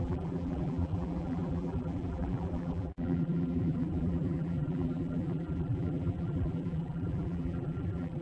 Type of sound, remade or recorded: remade